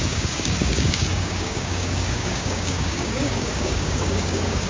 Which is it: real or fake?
fake